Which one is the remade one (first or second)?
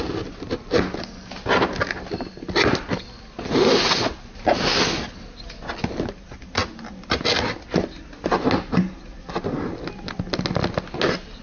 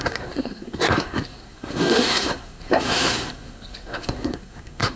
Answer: second